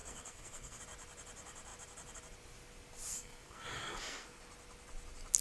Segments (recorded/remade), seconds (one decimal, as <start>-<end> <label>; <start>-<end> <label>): 0.0-0.8 remade; 0.8-3.1 recorded; 3.1-4.4 remade; 4.4-5.4 recorded